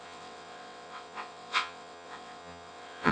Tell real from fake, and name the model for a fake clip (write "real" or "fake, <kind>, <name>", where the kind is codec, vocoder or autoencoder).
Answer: fake, vocoder, WaveNeXt